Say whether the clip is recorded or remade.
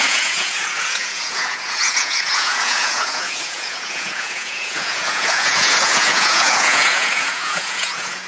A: remade